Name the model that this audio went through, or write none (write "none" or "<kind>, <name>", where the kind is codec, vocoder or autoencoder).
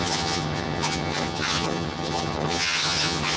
vocoder, HiFi-GAN